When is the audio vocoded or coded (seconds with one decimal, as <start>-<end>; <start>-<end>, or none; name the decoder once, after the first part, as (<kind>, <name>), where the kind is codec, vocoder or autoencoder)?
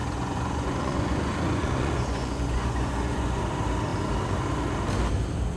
0.0-3.4 (vocoder, Vocos)